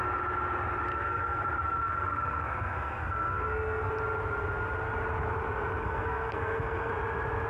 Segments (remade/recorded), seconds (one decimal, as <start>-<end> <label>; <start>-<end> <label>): 0.0-0.9 recorded; 0.9-3.9 remade; 3.9-5.8 recorded; 5.8-6.9 remade; 6.9-7.5 recorded